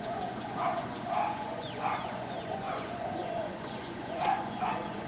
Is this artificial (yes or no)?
yes